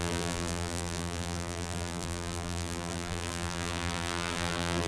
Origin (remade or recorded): remade